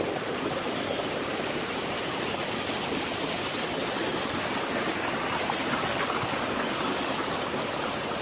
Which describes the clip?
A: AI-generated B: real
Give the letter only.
B